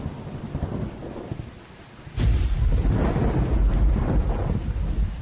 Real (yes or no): yes